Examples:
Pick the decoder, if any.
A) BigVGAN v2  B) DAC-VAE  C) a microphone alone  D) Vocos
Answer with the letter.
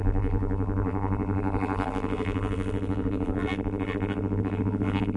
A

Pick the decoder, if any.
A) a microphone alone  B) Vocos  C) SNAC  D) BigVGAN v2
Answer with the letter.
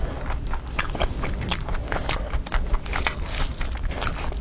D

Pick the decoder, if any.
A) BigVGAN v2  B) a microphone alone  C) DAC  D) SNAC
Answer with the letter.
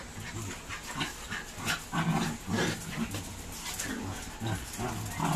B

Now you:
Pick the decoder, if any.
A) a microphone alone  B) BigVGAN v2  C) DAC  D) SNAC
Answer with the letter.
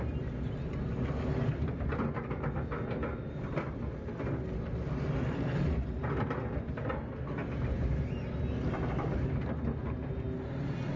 A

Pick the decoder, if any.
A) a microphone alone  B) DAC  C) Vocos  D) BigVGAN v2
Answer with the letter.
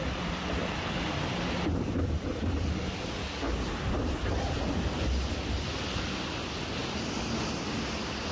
A